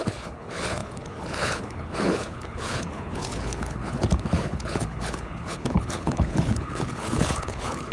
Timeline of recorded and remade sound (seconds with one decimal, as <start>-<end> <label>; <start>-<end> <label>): 0.0-7.9 remade